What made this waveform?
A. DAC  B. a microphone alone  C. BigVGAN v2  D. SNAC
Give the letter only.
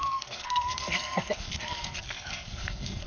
D